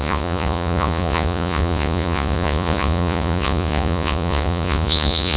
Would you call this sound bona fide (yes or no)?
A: no